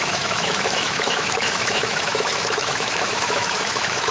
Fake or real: fake